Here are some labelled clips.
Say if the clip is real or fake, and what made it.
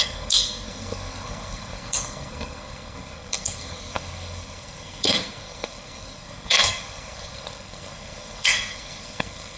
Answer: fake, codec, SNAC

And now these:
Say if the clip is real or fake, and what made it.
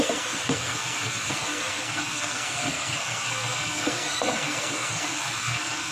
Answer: fake, codec, SNAC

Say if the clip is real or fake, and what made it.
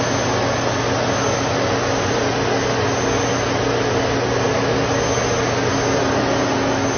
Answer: real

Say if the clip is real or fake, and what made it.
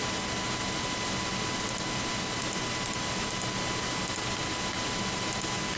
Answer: real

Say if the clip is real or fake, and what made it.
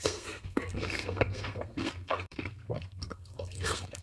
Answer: fake, codec, SNAC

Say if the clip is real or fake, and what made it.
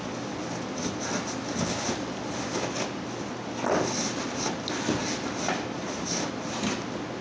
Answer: real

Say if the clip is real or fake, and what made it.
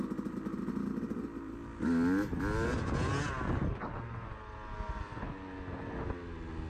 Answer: real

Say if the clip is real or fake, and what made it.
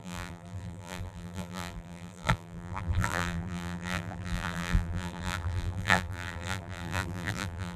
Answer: fake, vocoder, BigVGAN v2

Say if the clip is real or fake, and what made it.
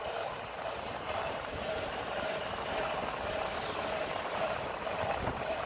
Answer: fake, vocoder, BigVGAN v2